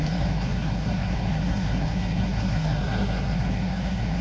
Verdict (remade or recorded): remade